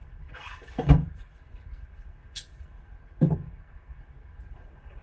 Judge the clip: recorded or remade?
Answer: remade